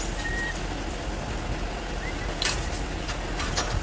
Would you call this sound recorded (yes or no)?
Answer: yes